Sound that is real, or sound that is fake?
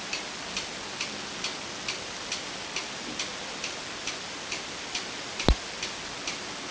real